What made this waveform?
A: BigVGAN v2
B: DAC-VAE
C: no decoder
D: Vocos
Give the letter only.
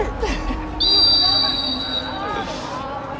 C